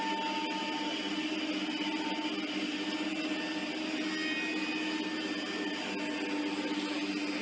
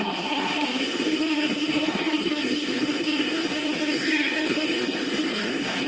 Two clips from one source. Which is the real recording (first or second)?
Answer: first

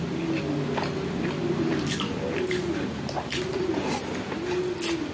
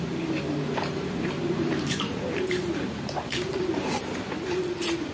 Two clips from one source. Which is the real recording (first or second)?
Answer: first